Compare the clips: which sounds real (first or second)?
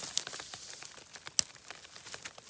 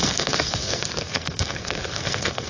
first